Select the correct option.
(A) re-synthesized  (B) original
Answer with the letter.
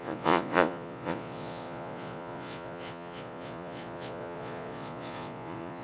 A